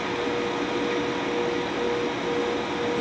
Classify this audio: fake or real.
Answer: real